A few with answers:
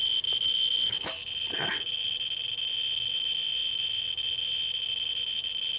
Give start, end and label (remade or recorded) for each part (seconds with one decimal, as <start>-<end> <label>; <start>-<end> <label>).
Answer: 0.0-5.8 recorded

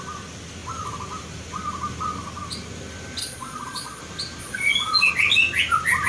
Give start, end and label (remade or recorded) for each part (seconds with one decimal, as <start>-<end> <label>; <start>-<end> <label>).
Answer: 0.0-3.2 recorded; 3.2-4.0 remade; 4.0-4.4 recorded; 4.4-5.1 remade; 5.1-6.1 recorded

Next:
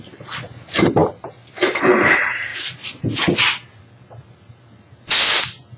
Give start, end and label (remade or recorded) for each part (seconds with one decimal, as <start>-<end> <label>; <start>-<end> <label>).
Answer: 0.0-1.0 remade; 1.0-1.8 recorded; 1.8-2.5 remade; 2.5-3.8 recorded; 3.8-5.8 remade